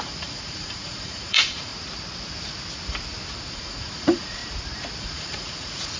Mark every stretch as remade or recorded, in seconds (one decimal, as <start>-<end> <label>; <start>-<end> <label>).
0.0-1.7 remade; 1.7-3.4 recorded; 3.4-4.4 remade; 4.4-5.0 recorded; 5.0-6.0 remade

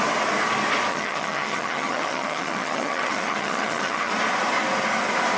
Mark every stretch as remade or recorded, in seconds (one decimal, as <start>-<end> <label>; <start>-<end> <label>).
0.0-0.9 recorded; 0.9-4.1 remade; 4.1-5.4 recorded

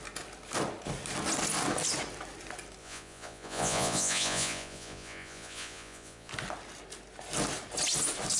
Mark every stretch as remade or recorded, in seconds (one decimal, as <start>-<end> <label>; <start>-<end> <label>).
0.0-2.8 recorded; 2.8-6.3 remade; 6.3-8.4 recorded

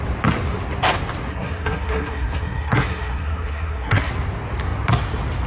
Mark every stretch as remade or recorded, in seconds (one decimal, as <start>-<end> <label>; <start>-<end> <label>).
0.0-1.3 recorded; 1.3-4.1 remade; 4.1-5.5 recorded

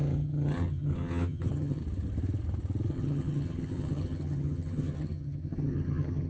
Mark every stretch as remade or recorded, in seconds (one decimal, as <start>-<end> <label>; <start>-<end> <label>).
0.0-1.8 remade; 1.8-2.9 recorded; 2.9-6.3 remade